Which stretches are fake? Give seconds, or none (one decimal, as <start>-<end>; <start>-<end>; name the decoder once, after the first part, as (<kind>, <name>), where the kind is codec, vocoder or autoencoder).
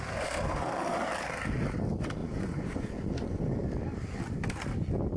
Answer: 2.2-3.4 (vocoder, Vocos)